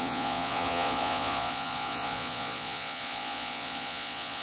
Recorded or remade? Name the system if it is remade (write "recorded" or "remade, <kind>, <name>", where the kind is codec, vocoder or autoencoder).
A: remade, vocoder, Vocos